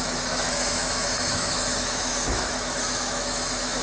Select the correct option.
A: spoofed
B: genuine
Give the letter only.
A